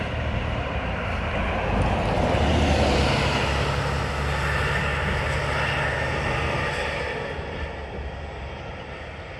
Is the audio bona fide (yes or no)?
yes